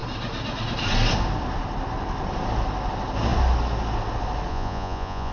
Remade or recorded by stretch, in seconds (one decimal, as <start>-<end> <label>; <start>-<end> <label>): 0.0-4.5 recorded; 4.5-5.3 remade